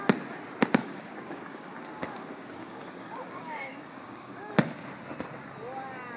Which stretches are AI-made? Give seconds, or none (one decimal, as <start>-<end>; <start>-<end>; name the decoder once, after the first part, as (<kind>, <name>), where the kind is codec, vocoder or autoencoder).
0.8-4.5 (codec, DAC)